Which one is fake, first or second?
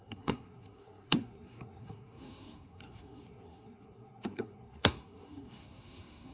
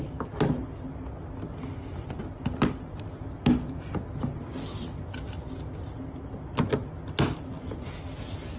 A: first